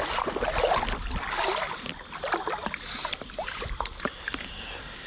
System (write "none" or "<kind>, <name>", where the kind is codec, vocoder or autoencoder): none